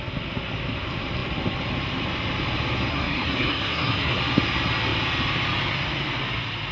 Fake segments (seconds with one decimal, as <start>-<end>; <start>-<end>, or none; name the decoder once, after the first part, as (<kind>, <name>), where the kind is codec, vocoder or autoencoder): 2.9-4.2 (codec, SNAC)